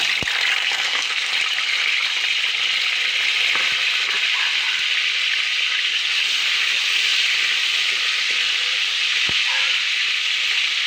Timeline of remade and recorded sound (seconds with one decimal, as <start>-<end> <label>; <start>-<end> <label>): 0.0-0.6 recorded; 0.6-1.3 remade; 1.3-10.9 recorded